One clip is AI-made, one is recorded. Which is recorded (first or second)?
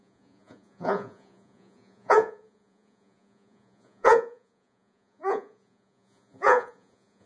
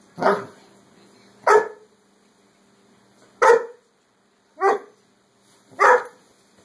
second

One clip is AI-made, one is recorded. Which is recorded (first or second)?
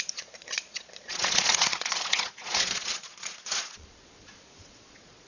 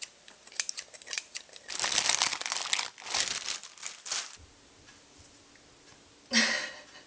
second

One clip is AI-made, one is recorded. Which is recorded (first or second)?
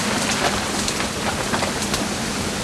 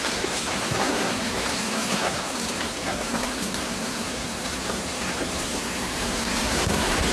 first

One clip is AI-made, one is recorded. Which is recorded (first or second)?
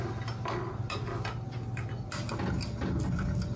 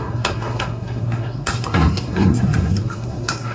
first